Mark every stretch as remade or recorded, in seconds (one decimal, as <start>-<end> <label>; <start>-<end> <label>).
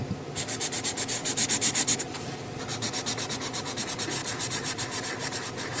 0.0-1.2 recorded; 1.2-2.6 remade; 2.6-4.2 recorded; 4.2-5.8 remade